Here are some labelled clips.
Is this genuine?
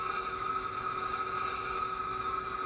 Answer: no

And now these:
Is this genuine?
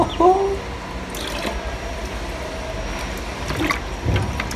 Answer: yes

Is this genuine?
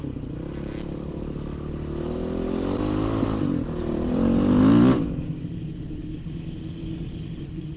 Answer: yes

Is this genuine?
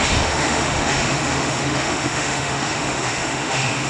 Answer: no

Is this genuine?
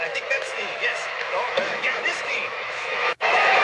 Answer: no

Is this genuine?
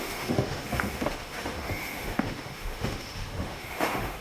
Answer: no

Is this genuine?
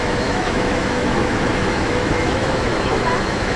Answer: no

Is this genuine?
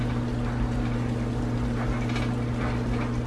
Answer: yes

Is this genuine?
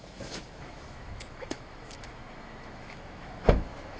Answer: no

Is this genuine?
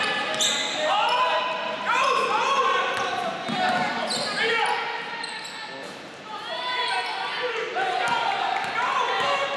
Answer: yes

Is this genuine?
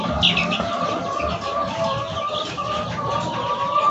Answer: yes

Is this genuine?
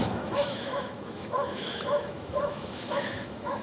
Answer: no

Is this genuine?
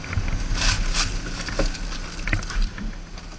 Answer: yes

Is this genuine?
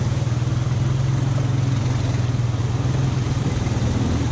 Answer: yes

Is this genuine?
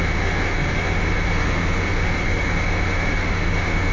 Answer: no